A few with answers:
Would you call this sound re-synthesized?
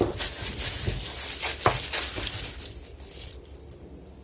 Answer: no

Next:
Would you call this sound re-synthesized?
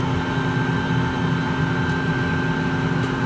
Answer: no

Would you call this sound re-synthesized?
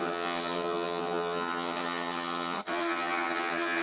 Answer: yes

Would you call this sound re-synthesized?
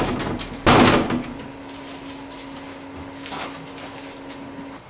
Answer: no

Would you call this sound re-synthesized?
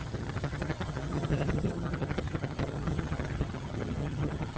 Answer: yes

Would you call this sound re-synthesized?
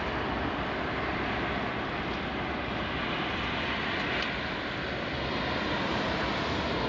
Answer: no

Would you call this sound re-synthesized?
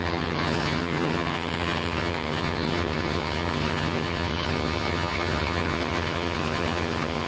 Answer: yes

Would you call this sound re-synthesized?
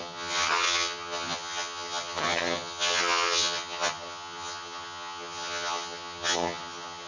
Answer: yes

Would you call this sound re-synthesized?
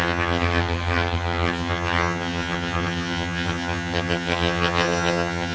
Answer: yes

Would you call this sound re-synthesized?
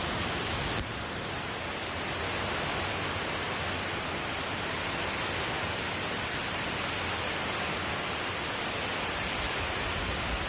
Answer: no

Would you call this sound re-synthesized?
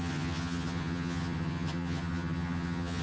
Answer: yes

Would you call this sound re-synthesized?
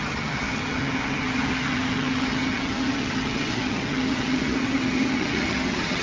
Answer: yes